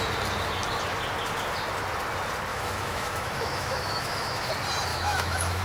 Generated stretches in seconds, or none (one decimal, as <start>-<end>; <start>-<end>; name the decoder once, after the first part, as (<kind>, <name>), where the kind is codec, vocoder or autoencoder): 2.5-4.5 (autoencoder, DAC-VAE); 4.9-5.6